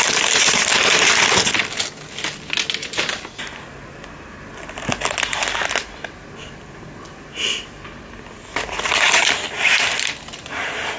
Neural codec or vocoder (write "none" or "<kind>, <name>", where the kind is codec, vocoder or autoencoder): none